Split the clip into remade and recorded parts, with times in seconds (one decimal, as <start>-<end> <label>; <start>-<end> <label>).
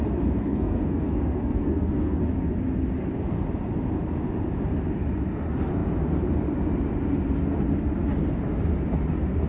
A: 0.0-0.4 recorded; 0.4-2.2 remade; 2.2-9.5 recorded